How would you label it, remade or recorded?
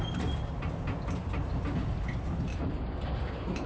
recorded